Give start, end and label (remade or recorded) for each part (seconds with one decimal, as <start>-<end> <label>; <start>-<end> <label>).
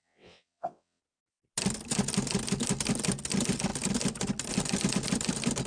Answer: 0.0-1.0 remade; 1.0-5.7 recorded